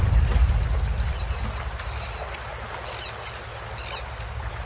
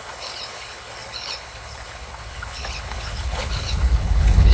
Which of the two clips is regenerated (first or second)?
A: second